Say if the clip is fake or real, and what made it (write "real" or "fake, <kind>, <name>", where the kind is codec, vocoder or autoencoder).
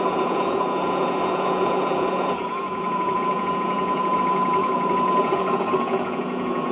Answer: fake, vocoder, Vocos